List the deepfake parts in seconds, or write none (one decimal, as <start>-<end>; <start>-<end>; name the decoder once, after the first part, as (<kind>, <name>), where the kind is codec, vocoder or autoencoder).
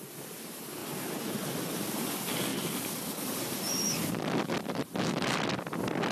0.8-2.1 (vocoder, BigVGAN v2); 2.5-4.1